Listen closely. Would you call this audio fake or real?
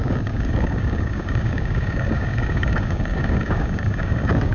fake